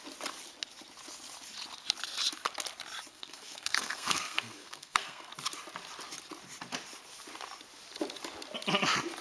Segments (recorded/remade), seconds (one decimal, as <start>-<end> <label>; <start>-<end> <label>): 0.0-3.1 recorded; 3.1-5.3 remade; 5.3-9.2 recorded